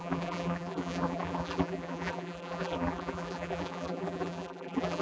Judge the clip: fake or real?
fake